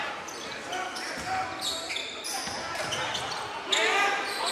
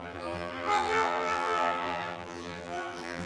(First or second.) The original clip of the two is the first